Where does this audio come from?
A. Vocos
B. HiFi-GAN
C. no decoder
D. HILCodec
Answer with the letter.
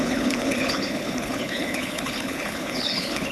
D